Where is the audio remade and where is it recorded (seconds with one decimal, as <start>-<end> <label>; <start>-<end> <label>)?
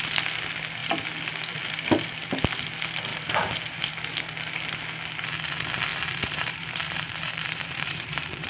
0.0-3.1 recorded; 3.1-3.9 remade; 3.9-5.9 recorded; 5.9-8.5 remade